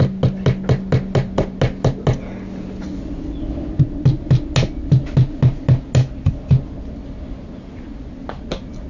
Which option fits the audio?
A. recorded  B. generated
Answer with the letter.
A